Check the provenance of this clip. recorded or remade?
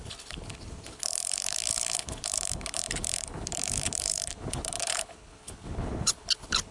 remade